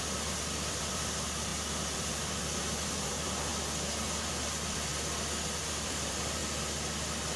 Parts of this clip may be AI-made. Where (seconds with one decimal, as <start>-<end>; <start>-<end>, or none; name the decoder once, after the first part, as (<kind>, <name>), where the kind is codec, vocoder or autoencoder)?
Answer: 0.0-3.5 (vocoder, BigVGAN v2); 4.3-4.9; 5.6-6.4